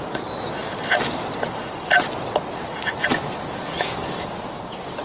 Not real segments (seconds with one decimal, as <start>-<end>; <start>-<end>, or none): none